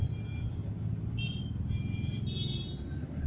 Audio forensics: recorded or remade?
recorded